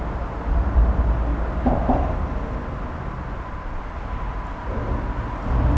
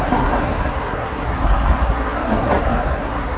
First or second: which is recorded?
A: first